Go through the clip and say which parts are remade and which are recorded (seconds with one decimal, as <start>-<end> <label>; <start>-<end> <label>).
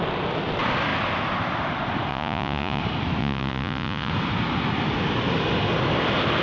0.0-2.1 recorded; 2.1-2.8 remade; 2.8-3.2 recorded; 3.2-4.1 remade; 4.1-6.4 recorded